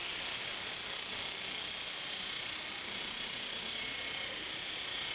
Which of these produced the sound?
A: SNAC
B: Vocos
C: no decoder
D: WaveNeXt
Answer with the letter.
C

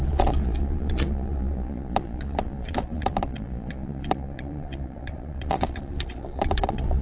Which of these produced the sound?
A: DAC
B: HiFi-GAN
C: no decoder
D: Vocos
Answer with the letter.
D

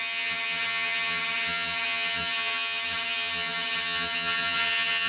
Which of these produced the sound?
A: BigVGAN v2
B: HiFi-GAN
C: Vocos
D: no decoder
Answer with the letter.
B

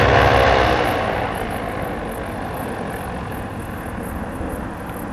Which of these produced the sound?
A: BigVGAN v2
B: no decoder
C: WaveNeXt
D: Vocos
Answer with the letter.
B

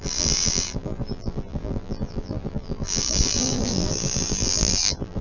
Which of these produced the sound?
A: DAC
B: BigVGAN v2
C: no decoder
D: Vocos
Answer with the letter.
B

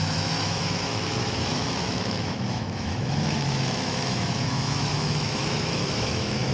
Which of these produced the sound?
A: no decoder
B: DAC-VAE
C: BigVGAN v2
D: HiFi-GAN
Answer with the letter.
B